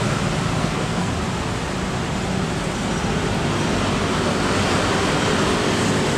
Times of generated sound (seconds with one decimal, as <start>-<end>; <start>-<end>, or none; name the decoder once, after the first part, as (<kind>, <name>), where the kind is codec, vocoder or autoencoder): 0.6-1.1 (codec, SNAC)